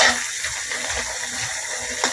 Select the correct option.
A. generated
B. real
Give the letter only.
B